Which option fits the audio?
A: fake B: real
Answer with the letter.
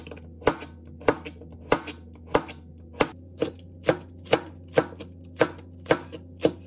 B